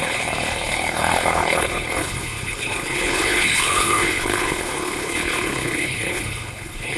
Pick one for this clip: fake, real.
fake